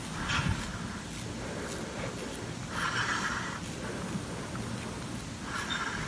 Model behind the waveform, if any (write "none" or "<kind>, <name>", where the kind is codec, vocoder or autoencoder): none